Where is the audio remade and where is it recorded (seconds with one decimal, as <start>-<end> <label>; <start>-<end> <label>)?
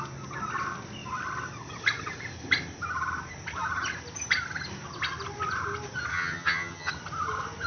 0.0-6.1 recorded; 6.1-6.9 remade; 6.9-7.7 recorded